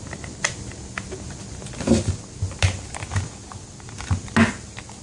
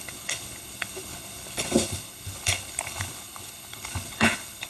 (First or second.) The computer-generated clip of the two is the second